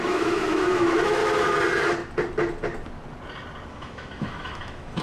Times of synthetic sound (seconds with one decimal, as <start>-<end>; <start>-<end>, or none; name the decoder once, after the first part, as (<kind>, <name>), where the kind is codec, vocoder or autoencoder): 0.0-1.2 (autoencoder, DAC-VAE); 3.7-5.0